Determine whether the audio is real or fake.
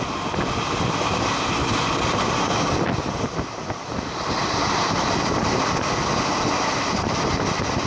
real